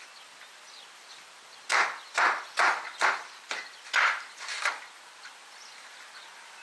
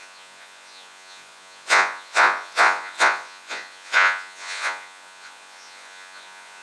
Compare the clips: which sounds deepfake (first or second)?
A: second